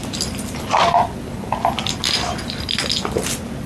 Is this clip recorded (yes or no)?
yes